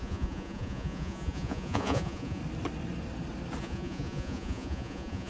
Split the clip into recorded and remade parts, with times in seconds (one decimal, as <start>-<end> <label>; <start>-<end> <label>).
0.0-2.4 remade; 2.4-3.6 recorded; 3.6-5.3 remade